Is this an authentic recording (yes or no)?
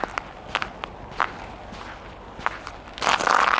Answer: yes